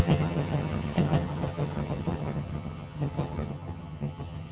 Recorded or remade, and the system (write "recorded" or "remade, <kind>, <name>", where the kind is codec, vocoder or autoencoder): remade, vocoder, HiFi-GAN